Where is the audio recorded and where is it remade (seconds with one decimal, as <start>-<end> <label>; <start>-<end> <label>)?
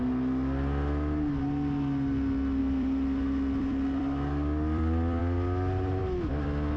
0.0-2.6 recorded; 2.6-5.2 remade; 5.2-6.8 recorded